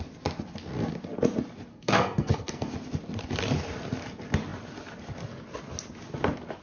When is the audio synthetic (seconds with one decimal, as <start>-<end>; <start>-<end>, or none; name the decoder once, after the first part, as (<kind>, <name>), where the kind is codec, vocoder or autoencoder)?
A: 1.7-2.7 (codec, SNAC)